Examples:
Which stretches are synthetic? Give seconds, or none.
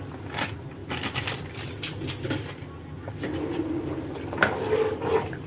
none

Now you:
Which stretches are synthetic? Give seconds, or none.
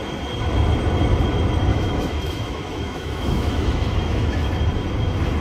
1.7-4.5 (autoencoder, DAC-VAE)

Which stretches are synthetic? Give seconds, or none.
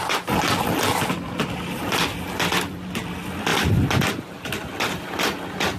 none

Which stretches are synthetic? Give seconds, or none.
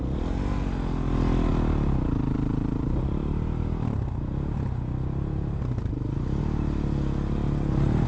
none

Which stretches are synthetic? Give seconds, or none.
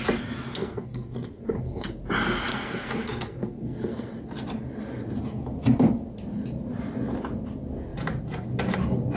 0.5-1.9 (codec, SNAC); 2.5-4.1